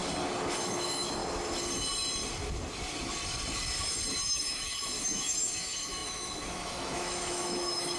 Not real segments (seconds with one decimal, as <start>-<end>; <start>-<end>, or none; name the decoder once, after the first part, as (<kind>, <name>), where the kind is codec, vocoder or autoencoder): 0.6-1.2 (autoencoder, DAC-VAE); 4.2-8.0